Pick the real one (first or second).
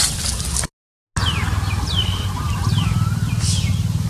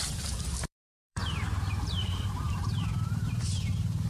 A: first